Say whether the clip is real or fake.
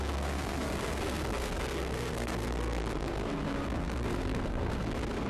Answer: fake